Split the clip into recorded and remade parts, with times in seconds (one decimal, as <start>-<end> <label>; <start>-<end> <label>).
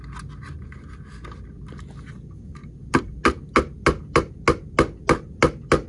0.0-5.9 recorded